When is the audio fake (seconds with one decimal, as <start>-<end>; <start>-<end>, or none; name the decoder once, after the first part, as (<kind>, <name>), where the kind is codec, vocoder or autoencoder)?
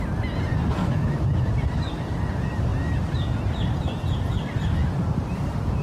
0.8-1.5 (autoencoder, DAC-VAE)